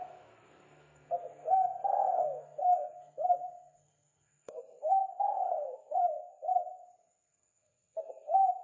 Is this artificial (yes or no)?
yes